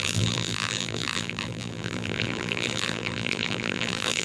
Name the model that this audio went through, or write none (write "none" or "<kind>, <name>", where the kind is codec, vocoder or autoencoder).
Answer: vocoder, BigVGAN v2